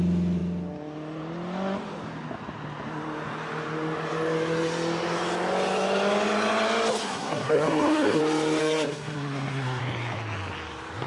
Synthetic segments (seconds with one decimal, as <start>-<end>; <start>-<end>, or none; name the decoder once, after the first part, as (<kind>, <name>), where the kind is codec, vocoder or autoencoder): 7.0-8.2 (codec, SNAC); 8.6-9.8